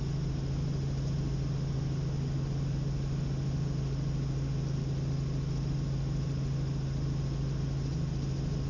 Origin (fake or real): real